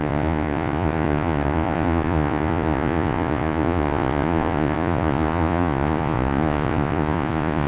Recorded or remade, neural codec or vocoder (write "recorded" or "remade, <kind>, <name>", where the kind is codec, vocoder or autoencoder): remade, vocoder, Vocos